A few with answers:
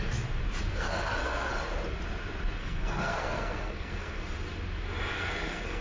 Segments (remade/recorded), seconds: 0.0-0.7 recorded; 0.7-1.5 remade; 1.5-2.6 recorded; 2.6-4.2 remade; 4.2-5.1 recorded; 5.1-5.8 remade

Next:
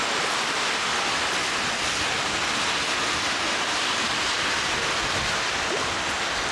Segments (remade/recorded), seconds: 0.0-6.5 recorded